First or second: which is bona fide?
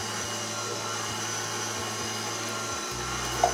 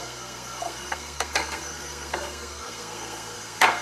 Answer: first